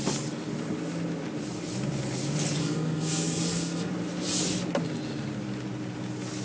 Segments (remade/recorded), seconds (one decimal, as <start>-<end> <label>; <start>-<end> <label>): 0.0-2.6 recorded; 2.6-3.9 remade; 3.9-6.4 recorded